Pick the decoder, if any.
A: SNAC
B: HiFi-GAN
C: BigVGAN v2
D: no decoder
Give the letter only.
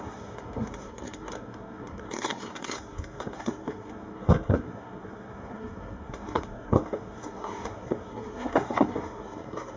A